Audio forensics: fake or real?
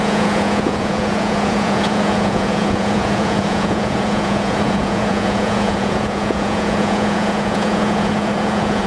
fake